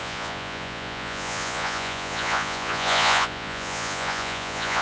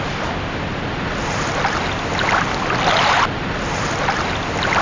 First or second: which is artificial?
first